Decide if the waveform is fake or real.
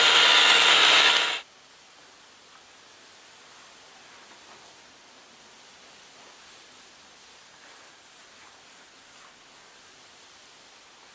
real